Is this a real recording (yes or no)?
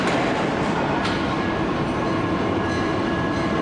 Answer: yes